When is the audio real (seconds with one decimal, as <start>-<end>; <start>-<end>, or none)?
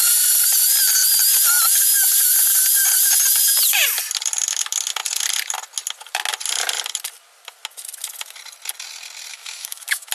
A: 0.0-9.3